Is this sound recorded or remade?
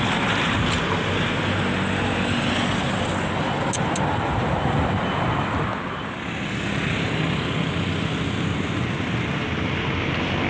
recorded